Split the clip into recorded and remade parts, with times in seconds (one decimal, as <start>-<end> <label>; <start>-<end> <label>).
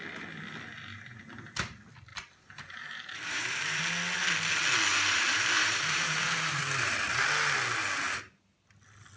0.0-2.1 recorded; 2.1-3.8 remade; 3.8-4.9 recorded; 4.9-6.6 remade; 6.6-9.2 recorded